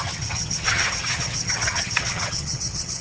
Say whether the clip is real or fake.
fake